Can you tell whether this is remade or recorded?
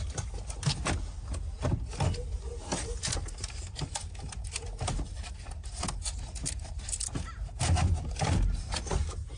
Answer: recorded